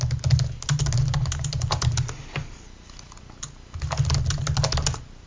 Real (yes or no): yes